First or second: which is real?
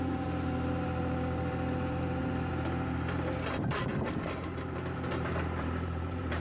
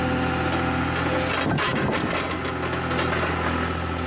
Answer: second